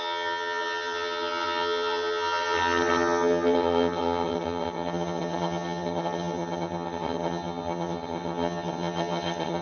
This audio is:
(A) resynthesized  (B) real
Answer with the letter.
A